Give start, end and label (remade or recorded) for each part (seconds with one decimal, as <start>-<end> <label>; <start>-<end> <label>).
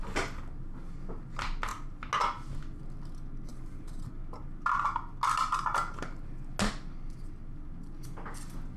0.0-3.5 recorded; 3.5-4.1 remade; 4.1-8.8 recorded